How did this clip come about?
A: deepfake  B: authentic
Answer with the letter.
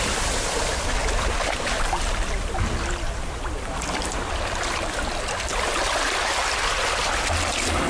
B